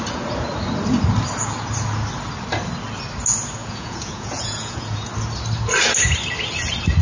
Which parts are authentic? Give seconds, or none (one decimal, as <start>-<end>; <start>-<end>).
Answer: 0.0-3.6; 5.1-7.0

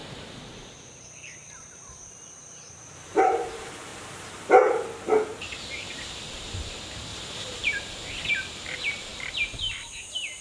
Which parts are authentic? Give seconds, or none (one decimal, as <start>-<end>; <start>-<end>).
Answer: 3.9-5.4

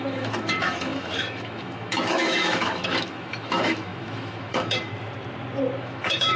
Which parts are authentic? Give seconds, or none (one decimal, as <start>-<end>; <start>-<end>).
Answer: 4.9-5.8